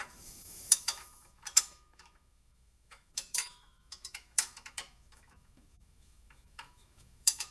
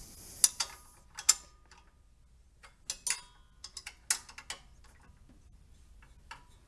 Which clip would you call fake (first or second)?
first